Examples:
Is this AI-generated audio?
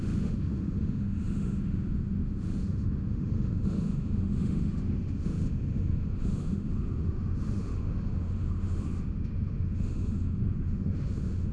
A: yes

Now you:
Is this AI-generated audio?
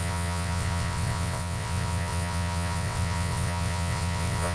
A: yes